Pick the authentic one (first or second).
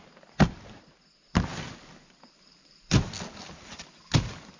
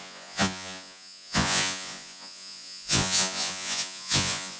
first